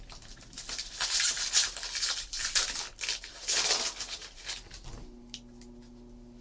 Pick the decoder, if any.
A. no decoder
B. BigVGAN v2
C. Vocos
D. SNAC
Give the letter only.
A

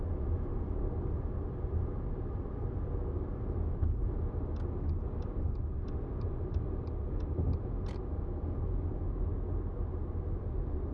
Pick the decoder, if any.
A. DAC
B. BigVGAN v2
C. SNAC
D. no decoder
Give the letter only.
D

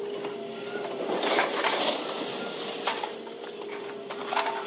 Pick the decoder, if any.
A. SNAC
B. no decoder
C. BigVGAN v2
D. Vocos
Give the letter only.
B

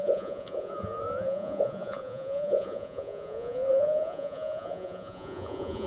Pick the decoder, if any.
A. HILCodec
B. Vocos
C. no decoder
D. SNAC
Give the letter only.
B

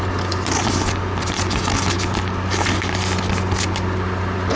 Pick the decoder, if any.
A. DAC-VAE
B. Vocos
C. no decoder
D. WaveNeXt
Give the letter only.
C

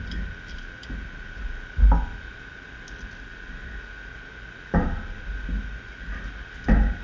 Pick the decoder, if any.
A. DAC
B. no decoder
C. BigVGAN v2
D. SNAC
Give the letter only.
B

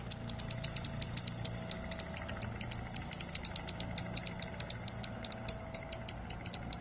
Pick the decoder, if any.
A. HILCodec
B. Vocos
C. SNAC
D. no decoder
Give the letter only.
D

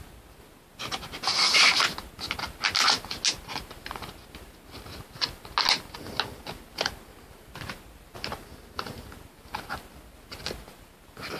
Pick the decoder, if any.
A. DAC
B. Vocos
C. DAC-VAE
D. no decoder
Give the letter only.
D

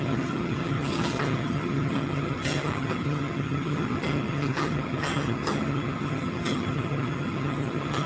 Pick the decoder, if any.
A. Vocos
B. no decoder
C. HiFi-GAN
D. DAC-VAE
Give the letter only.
C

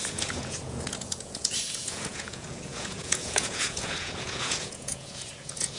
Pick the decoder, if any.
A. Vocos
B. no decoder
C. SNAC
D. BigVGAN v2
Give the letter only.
A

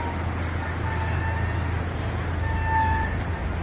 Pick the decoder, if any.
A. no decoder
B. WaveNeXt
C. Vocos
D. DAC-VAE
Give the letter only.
A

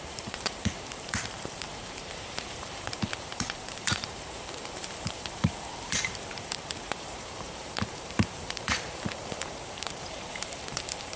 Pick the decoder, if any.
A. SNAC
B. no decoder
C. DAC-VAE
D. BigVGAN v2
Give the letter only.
D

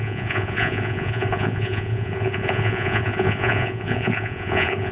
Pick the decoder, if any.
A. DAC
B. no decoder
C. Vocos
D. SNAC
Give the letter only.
C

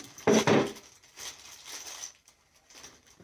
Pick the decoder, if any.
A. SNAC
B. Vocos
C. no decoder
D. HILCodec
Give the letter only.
C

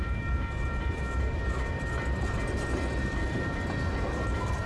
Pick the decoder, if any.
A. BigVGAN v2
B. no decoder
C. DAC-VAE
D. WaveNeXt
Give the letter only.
A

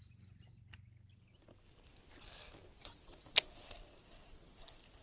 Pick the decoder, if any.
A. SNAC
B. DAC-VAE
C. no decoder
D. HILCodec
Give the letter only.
C